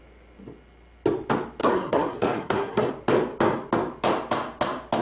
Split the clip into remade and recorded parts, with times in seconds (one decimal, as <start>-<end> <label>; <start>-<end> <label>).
0.0-1.6 recorded; 1.6-2.9 remade; 2.9-5.0 recorded